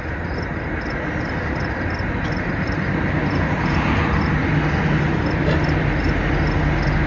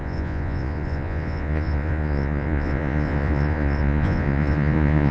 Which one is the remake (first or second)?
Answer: second